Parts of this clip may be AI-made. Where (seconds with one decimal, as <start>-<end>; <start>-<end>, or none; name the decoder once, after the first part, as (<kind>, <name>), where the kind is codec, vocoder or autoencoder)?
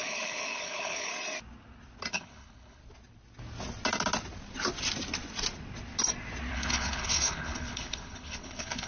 0.0-1.1 (codec, HILCodec); 2.1-2.8; 6.5-8.9